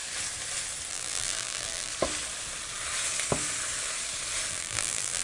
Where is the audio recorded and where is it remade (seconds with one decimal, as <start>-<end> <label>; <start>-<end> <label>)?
0.0-0.9 recorded; 0.9-1.9 remade; 1.9-4.5 recorded; 4.5-5.2 remade